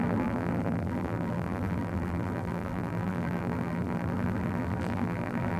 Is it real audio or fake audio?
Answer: fake